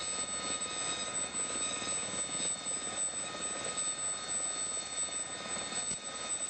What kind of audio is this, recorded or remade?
recorded